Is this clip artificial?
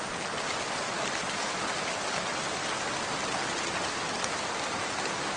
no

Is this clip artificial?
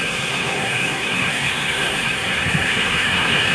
yes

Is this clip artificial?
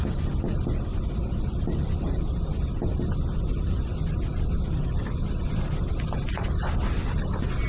no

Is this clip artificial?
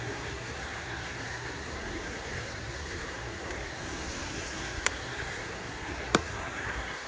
yes